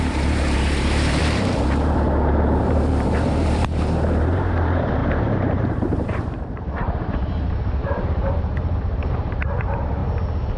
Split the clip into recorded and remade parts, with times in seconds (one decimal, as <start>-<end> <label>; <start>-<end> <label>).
0.0-1.2 remade; 1.2-2.6 recorded; 2.6-10.0 remade; 10.0-10.6 recorded